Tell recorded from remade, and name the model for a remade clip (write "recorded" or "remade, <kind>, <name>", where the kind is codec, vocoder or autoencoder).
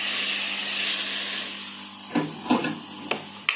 recorded